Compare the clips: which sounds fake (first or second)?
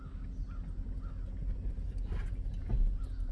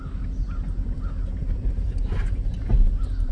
second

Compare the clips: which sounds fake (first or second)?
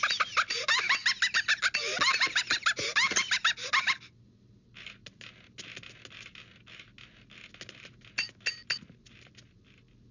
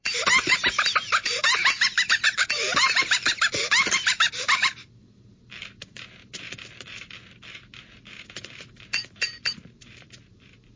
second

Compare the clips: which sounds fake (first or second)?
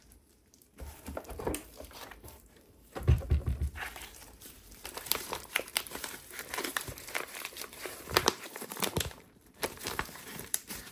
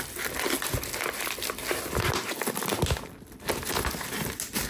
first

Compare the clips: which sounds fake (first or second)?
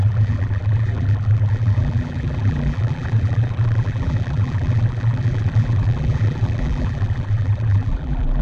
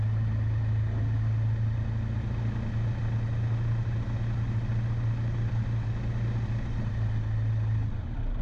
first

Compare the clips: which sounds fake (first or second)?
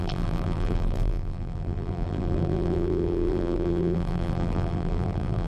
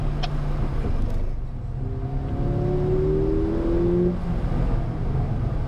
first